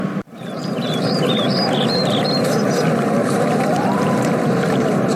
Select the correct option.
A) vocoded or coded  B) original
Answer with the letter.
A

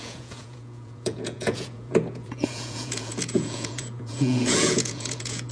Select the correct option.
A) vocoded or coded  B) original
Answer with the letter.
A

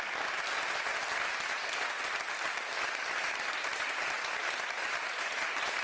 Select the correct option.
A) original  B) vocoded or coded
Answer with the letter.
A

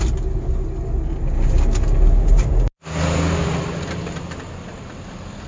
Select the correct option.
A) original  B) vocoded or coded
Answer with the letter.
A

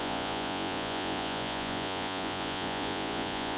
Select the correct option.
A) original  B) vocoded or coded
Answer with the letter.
B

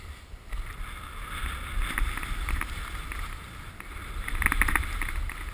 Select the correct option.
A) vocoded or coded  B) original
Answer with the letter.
B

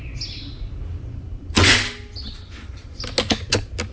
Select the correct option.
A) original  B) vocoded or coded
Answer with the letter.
A